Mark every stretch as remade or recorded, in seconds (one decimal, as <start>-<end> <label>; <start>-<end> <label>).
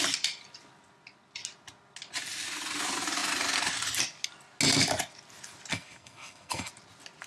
0.0-5.7 recorded; 5.7-6.7 remade; 6.7-7.3 recorded